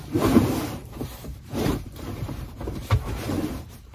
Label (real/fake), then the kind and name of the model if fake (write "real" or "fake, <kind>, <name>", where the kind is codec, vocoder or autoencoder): fake, vocoder, BigVGAN v2